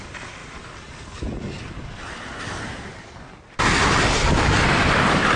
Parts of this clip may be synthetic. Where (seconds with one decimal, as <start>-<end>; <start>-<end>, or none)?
none